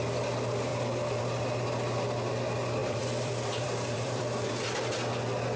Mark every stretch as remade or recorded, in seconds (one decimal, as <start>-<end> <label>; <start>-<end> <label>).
0.0-2.8 recorded; 2.8-4.5 remade; 4.5-5.6 recorded